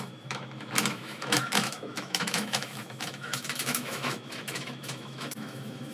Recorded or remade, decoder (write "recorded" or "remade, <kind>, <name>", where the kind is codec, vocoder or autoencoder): remade, autoencoder, DAC-VAE